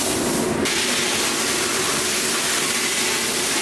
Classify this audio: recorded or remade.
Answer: recorded